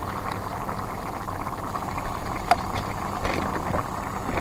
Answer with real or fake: real